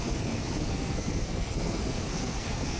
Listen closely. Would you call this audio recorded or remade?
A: remade